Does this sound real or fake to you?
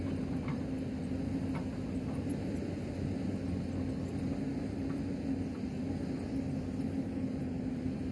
real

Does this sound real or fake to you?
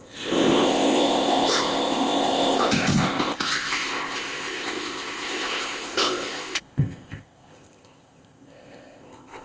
fake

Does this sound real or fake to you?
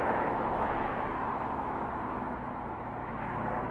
fake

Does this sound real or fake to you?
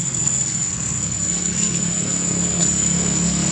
fake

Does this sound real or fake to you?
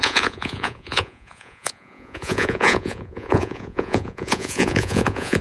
fake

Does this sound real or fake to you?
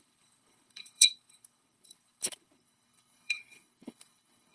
fake